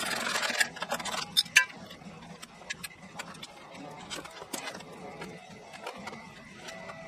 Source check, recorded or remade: recorded